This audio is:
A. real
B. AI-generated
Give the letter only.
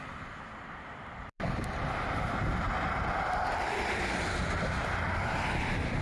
B